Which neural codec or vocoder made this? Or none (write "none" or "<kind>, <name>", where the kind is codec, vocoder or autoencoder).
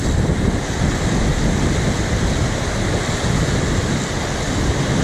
none